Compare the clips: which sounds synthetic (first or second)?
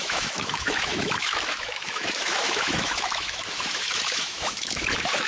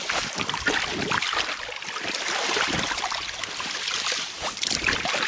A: first